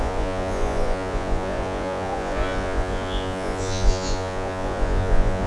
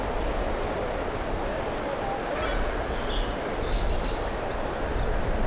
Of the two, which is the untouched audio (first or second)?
second